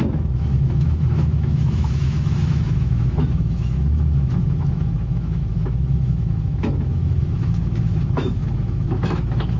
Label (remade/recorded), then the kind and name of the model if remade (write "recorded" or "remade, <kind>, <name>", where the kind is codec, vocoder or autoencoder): remade, autoencoder, DAC-VAE